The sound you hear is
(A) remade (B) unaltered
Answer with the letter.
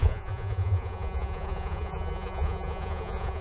A